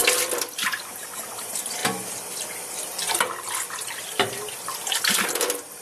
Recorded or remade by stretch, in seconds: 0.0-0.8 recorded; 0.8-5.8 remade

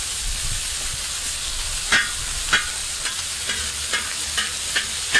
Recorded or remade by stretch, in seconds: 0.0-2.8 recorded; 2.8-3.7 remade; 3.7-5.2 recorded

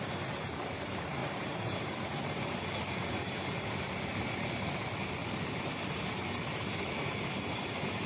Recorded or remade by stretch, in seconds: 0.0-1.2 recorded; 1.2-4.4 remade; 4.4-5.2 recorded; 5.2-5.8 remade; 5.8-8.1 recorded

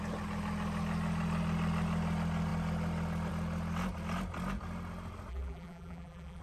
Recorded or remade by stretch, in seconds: 0.0-5.3 recorded; 5.3-6.4 remade

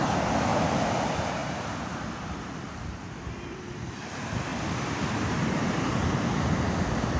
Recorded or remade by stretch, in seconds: 0.0-0.5 recorded; 0.5-1.0 remade; 1.0-1.4 recorded; 1.4-2.7 remade; 2.7-4.5 recorded; 4.5-5.8 remade; 5.8-7.2 recorded

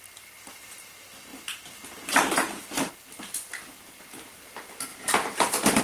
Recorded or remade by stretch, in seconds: 0.0-1.3 recorded; 1.3-2.9 remade; 2.9-4.9 recorded; 4.9-5.8 remade

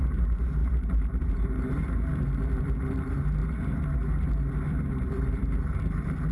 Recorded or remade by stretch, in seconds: 0.0-3.4 remade; 3.4-4.9 recorded; 4.9-6.3 remade

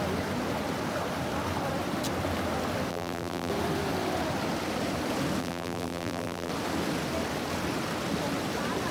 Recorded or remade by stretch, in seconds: 0.0-2.9 recorded; 2.9-3.5 remade; 3.5-5.4 recorded; 5.4-6.5 remade; 6.5-8.9 recorded